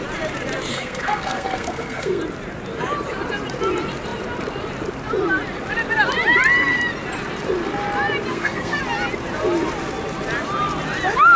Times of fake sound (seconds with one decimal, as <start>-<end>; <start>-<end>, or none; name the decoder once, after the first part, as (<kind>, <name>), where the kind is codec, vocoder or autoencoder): 0.7-2.2 (codec, SNAC); 8.3-8.8